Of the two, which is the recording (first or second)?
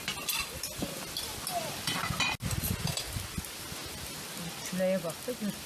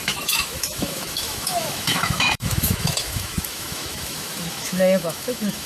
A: first